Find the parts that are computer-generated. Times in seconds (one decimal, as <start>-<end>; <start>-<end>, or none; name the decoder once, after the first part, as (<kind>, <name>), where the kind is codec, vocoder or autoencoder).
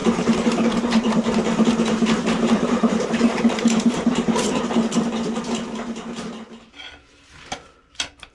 0.0-4.6 (vocoder, BigVGAN v2)